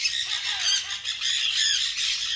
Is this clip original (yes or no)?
yes